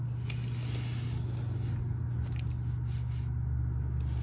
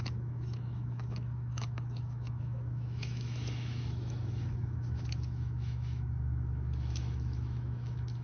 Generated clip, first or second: second